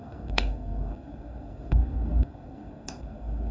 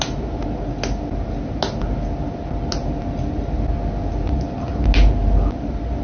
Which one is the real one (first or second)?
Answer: second